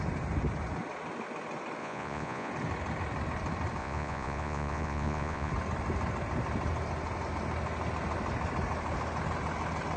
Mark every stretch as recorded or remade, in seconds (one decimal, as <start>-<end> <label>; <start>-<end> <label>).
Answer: 0.0-1.8 recorded; 1.8-2.5 remade; 2.5-3.8 recorded; 3.8-5.5 remade; 5.5-10.0 recorded